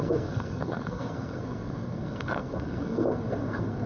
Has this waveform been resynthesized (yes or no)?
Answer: yes